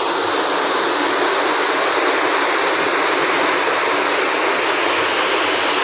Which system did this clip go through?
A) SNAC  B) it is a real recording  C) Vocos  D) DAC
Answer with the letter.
B